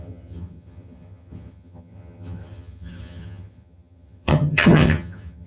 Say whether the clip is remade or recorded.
remade